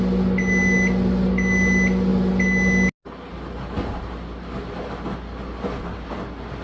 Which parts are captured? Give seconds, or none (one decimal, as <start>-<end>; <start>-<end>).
0.0-6.6